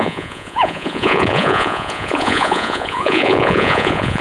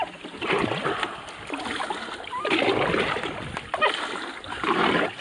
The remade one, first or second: first